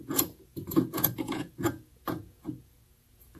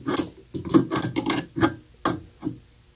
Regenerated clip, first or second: first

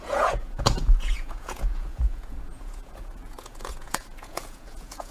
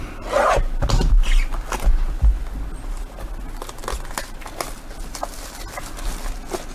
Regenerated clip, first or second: first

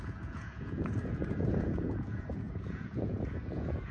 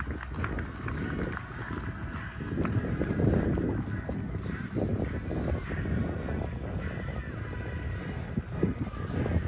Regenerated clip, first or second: first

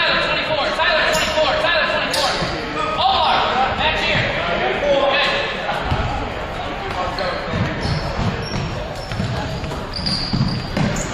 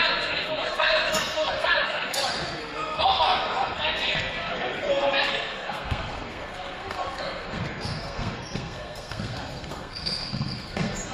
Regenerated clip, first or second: second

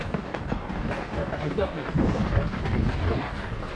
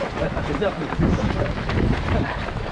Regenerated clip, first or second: first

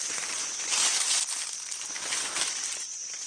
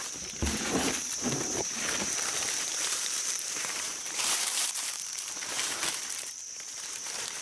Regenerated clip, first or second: second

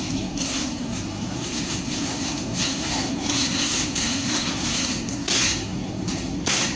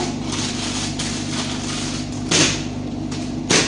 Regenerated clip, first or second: first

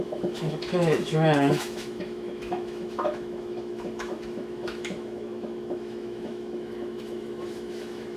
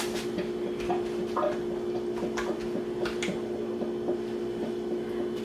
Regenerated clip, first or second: first